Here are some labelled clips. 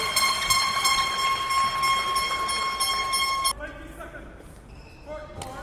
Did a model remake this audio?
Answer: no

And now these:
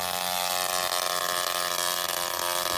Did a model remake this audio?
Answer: no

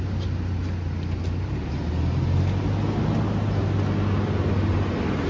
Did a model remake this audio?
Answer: no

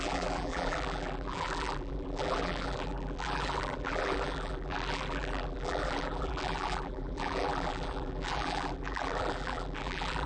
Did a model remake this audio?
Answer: yes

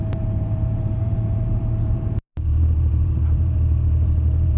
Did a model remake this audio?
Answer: yes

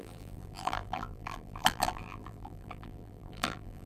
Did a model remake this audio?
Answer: yes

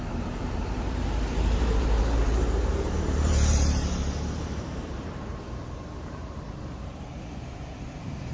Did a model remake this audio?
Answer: yes